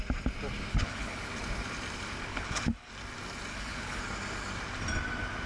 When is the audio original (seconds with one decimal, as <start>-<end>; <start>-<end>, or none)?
0.0-0.7; 1.2-2.3; 2.9-3.5; 4.0-5.5